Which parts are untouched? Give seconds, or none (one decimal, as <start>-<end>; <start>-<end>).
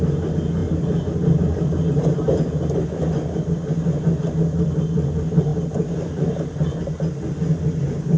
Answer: 0.0-8.2